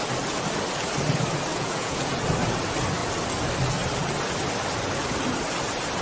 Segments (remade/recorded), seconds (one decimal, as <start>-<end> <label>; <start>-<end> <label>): 0.0-1.5 recorded; 1.5-2.1 remade; 2.1-6.0 recorded